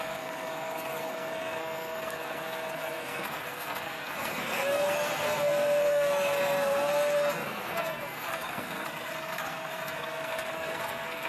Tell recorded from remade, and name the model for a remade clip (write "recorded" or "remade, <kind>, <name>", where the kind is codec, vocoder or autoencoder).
remade, codec, SNAC